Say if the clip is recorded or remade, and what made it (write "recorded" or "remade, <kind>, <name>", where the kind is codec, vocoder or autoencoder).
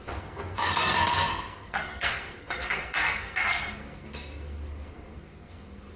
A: remade, codec, SNAC